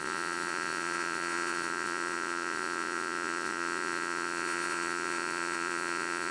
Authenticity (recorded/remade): remade